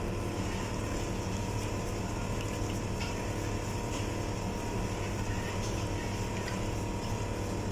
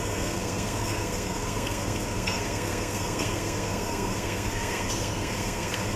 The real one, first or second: first